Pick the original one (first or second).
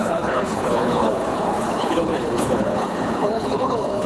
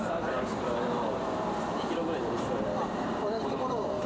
second